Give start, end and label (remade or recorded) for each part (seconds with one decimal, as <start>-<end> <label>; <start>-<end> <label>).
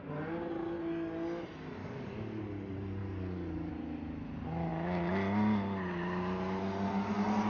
0.0-1.8 recorded; 1.8-2.4 remade; 2.4-3.0 recorded; 3.0-3.7 remade; 3.7-7.5 recorded